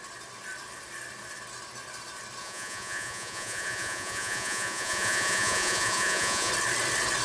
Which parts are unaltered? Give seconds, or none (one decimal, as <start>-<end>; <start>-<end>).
0.0-2.4; 6.5-7.2